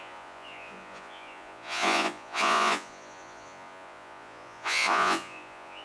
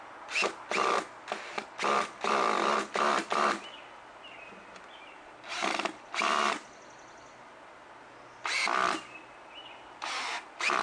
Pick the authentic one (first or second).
second